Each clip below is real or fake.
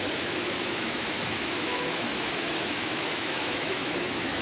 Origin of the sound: fake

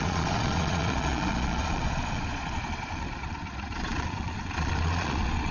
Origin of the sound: fake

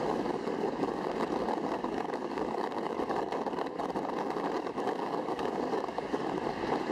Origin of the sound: fake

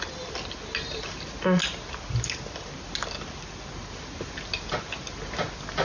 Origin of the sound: real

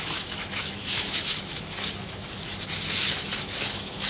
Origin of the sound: fake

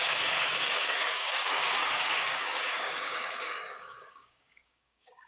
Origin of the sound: fake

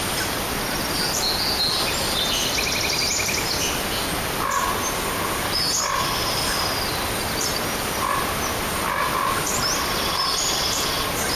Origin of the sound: real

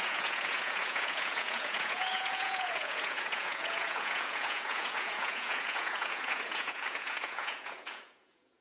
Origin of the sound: fake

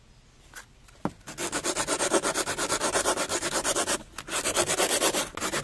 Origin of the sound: real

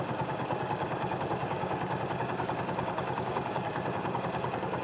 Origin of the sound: fake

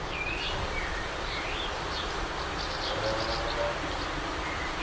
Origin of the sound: real